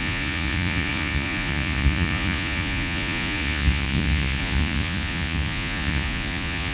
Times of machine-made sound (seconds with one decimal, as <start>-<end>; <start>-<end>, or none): 0.0-6.7